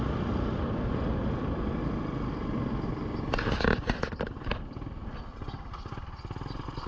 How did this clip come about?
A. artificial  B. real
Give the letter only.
B